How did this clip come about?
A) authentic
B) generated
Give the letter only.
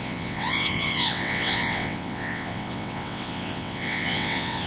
B